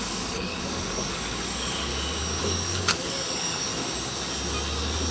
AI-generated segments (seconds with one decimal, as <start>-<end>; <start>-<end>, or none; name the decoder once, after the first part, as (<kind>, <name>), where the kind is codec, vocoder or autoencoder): 0.0-1.9 (codec, DAC); 2.4-3.7